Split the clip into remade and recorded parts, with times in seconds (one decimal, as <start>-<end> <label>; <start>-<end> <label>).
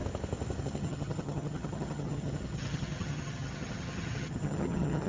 0.0-0.6 recorded; 0.6-5.1 remade